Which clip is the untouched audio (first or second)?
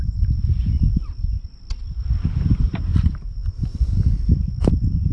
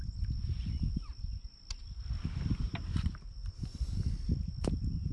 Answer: second